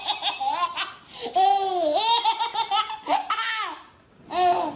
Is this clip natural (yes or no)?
yes